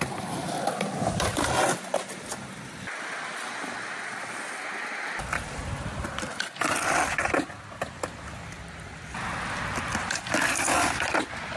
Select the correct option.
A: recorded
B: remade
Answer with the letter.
A